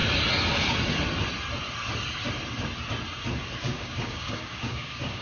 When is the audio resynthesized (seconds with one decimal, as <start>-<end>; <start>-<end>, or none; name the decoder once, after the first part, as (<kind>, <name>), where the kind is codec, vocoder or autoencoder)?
3.6-5.2 (codec, DAC)